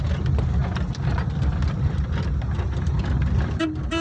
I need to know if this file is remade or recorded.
recorded